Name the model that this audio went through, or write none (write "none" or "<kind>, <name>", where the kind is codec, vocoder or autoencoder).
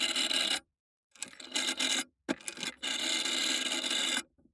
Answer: none